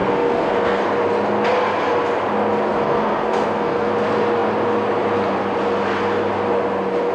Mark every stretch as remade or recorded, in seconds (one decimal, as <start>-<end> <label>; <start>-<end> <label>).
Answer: 0.0-0.8 remade; 0.8-2.7 recorded; 2.7-3.9 remade; 3.9-7.1 recorded